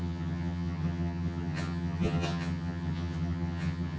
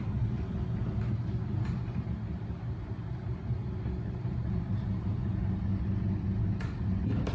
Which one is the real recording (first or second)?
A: second